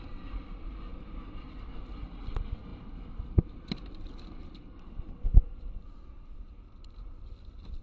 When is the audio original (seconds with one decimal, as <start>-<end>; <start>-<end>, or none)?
0.0-0.9; 1.5-2.7